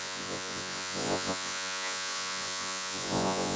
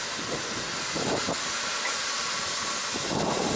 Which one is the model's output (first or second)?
first